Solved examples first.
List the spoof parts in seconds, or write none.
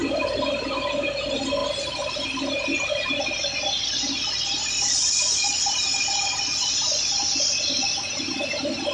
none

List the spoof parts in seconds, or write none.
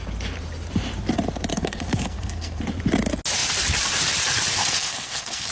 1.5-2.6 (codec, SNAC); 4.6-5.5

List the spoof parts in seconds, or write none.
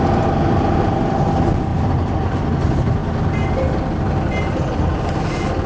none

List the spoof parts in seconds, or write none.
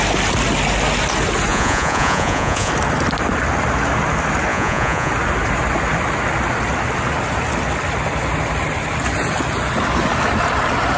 1.5-2.7 (vocoder, Vocos); 4.5-5.1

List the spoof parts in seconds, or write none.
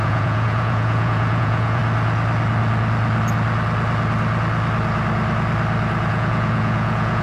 0.0-1.8 (vocoder, Vocos); 6.1-7.2